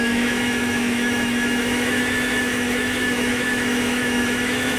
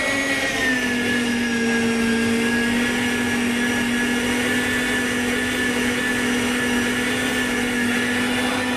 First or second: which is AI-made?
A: first